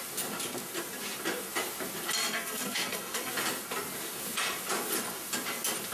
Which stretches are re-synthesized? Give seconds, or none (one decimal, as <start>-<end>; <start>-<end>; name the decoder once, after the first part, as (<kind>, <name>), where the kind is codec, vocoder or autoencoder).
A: 2.2-3.3 (codec, SNAC)